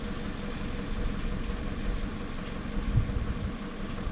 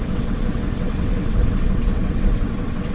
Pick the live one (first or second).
first